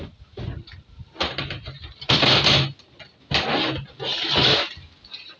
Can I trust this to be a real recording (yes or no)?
yes